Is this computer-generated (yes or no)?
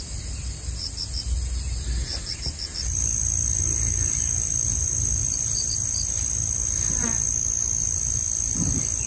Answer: no